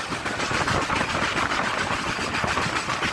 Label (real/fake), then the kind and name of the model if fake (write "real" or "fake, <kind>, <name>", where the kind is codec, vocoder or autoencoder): real